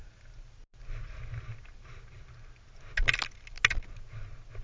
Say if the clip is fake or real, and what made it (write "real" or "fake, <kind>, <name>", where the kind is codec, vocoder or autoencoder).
real